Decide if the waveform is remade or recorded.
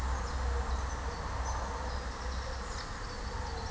recorded